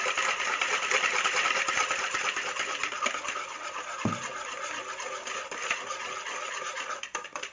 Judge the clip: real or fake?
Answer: real